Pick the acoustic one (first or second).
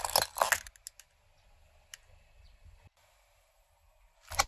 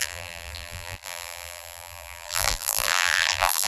first